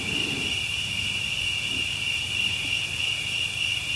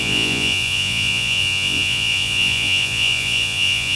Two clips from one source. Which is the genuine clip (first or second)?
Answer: first